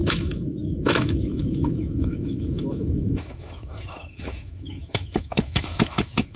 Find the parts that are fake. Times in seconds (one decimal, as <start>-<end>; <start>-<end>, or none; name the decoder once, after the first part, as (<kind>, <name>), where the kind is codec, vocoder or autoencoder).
0.0-6.4 (autoencoder, DAC-VAE)